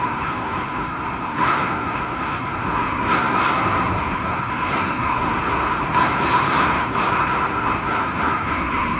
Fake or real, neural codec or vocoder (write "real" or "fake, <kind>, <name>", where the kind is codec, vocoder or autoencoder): fake, codec, SNAC